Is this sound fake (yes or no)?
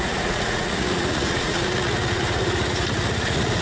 yes